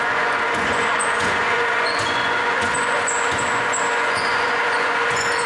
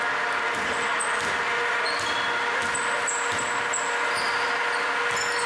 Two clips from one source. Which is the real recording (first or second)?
second